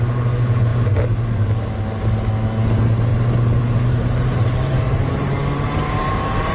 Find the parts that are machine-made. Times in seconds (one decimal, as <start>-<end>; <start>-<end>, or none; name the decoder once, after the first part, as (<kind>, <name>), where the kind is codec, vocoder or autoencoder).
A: 3.1-6.5 (vocoder, BigVGAN v2)

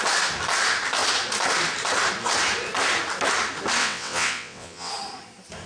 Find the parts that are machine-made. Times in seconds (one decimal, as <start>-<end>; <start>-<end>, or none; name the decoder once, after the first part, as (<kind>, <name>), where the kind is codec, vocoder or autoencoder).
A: 3.8-4.9 (vocoder, WaveNeXt)

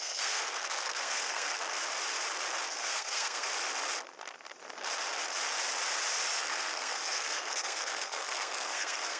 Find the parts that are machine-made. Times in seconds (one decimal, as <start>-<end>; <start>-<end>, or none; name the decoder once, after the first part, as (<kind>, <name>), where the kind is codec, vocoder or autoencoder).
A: 0.0-1.8 (codec, SNAC); 2.8-3.5; 6.4-9.2

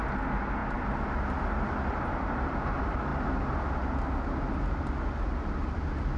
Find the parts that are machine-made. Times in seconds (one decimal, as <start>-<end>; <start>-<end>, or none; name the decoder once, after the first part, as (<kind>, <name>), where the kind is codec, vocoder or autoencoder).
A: none

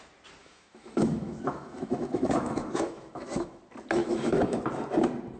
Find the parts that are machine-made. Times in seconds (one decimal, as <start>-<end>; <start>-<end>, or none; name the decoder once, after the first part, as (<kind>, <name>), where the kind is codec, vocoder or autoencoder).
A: 0.4-3.6 (autoencoder, DAC-VAE); 4.0-4.6

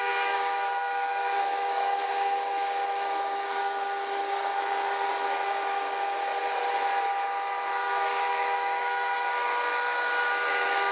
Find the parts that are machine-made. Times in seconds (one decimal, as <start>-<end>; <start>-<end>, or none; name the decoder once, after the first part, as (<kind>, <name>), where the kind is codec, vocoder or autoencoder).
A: 0.0-6.3 (codec, DAC); 7.7-10.9